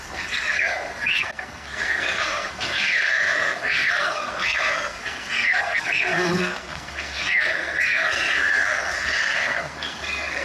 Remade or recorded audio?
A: remade